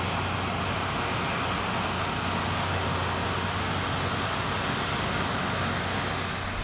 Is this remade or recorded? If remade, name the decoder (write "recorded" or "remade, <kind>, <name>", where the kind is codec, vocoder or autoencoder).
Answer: recorded